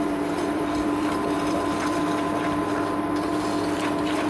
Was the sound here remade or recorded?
remade